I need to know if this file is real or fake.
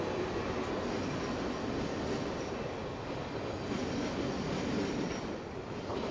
real